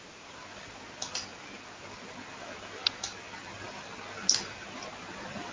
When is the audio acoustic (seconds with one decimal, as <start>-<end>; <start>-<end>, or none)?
0.0-5.5